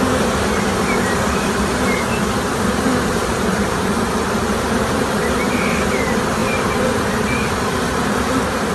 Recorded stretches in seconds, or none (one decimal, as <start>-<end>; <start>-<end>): none